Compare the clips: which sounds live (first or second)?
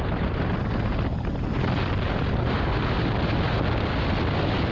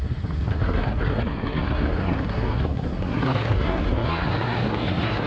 first